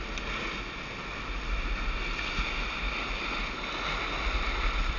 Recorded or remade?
recorded